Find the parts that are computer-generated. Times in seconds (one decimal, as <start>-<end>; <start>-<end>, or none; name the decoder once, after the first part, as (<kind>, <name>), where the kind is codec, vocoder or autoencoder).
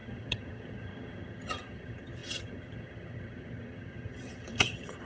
0.0-5.1 (vocoder, HiFi-GAN)